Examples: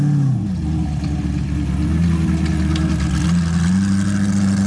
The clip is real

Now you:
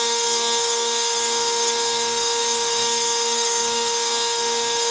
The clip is fake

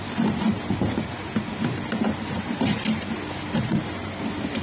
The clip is real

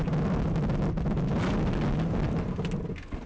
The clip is real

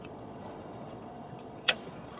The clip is fake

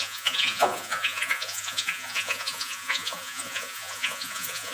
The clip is fake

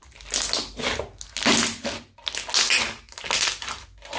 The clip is real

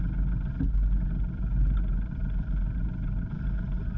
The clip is real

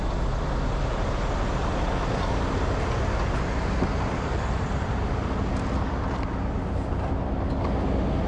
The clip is real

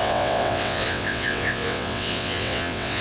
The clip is fake